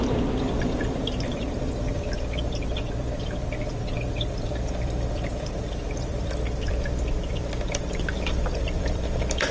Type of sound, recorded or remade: remade